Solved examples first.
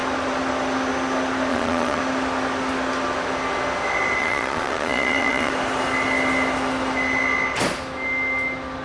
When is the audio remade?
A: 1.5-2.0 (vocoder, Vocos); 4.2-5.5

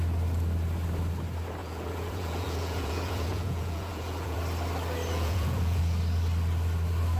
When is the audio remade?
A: 1.6-4.4 (vocoder, Vocos); 5.1-5.8

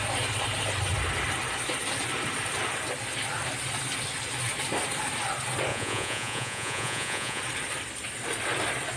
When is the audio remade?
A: 5.7-7.4 (vocoder, Vocos)

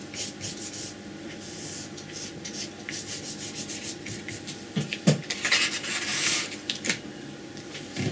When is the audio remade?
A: none

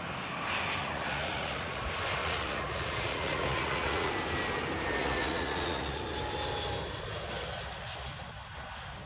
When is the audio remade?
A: 0.8-1.8 (vocoder, Vocos); 2.2-4.1; 5.0-6.0

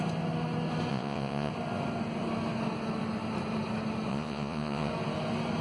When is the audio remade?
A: 0.9-1.5 (vocoder, Vocos); 4.1-4.9

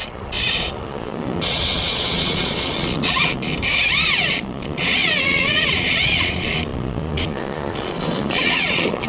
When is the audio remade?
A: 0.0-3.5 (vocoder, Vocos); 4.2-9.1